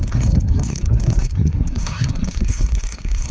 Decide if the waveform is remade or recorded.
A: remade